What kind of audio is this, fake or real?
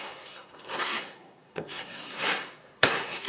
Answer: fake